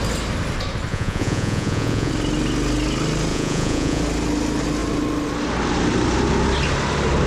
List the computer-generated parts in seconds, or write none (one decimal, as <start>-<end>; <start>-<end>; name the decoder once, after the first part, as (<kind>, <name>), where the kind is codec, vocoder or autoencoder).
0.9-2.1 (vocoder, Vocos); 3.3-4.0